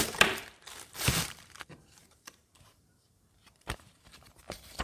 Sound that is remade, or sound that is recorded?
remade